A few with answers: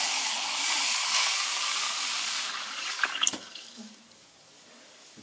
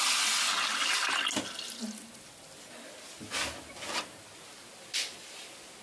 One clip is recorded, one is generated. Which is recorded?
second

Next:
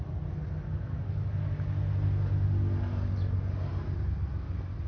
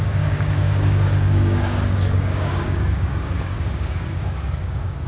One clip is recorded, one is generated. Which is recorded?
first